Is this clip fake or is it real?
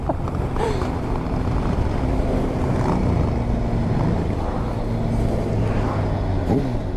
real